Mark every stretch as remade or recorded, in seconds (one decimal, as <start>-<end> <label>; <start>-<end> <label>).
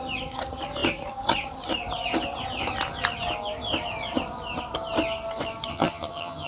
0.0-5.7 recorded; 5.7-6.5 remade